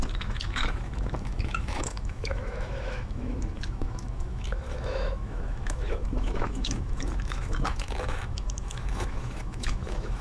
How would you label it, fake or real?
fake